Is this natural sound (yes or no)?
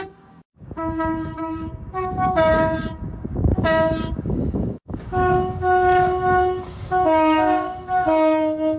no